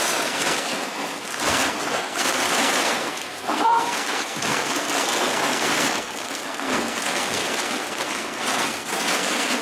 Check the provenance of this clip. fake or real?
fake